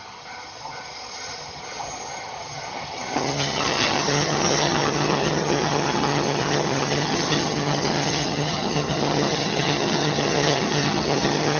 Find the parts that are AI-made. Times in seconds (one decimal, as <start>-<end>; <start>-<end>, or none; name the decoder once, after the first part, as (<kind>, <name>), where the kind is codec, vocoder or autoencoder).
0.0-11.6 (vocoder, HiFi-GAN)